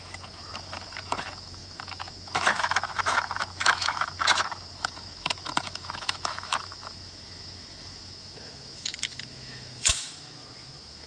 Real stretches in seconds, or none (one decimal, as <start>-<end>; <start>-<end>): none